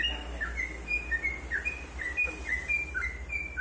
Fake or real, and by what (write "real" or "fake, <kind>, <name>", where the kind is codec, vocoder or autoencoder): real